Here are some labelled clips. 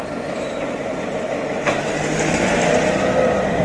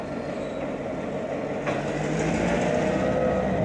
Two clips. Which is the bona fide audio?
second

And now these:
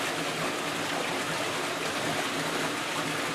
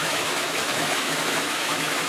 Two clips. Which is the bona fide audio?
first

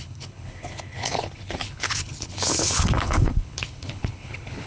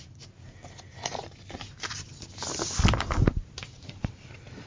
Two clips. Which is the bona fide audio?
second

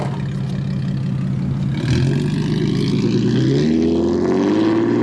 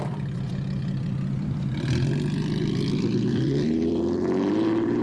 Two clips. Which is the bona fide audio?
first